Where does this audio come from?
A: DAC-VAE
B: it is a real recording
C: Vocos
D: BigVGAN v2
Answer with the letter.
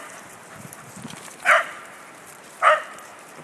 B